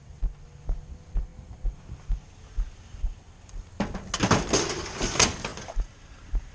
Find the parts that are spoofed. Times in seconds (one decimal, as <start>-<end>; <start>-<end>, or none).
none